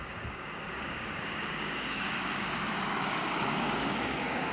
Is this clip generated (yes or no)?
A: yes